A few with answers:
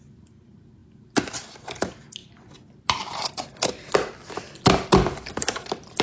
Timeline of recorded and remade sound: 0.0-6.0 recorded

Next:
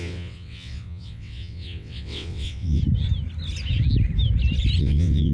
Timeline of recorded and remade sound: 0.0-2.8 remade; 2.8-4.8 recorded; 4.8-5.3 remade

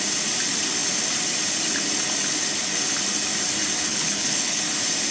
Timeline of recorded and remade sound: 0.0-3.9 recorded; 3.9-4.6 remade; 4.6-5.1 recorded

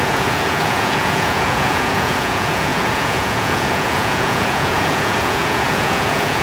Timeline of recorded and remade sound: 0.0-6.4 remade

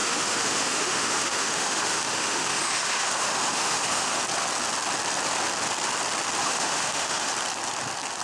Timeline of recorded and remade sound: 0.0-4.2 remade; 4.2-6.4 recorded; 6.4-7.3 remade; 7.3-8.2 recorded